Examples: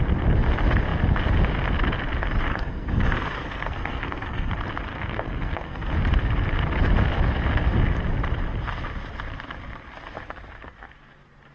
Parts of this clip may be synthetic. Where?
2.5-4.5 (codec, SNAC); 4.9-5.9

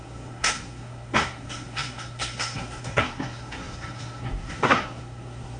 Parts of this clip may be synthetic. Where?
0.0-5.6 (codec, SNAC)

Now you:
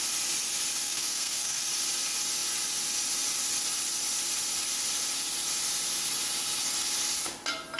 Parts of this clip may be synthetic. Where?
0.8-1.7 (codec, SNAC)